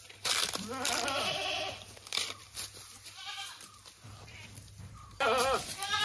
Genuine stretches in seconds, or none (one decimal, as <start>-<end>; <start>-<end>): 0.0-6.0